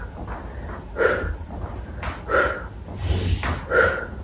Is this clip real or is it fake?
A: real